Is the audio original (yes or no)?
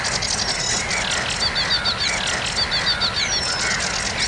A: yes